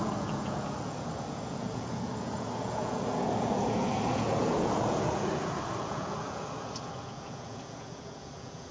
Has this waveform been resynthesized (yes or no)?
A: yes